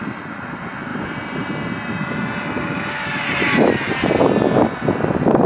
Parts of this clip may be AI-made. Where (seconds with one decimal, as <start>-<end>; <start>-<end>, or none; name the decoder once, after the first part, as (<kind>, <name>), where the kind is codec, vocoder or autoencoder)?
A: 0.9-4.2 (vocoder, BigVGAN v2)